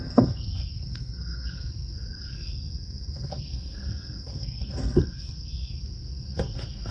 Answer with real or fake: fake